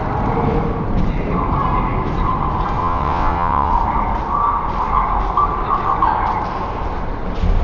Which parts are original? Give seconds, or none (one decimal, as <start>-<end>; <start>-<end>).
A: 0.0-2.8; 3.7-7.6